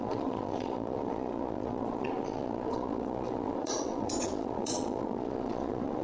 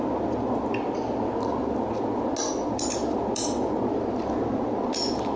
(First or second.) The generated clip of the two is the first